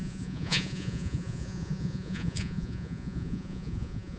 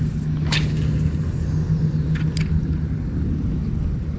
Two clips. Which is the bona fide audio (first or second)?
second